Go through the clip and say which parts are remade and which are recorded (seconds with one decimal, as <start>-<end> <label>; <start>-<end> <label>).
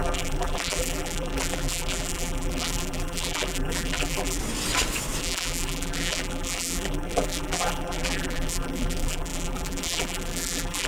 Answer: 0.0-4.4 remade; 4.4-5.2 recorded; 5.2-10.9 remade